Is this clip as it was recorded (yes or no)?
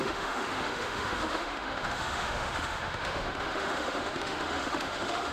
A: no